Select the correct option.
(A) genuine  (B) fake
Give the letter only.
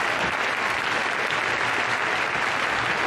A